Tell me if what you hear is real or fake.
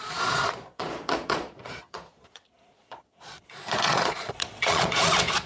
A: fake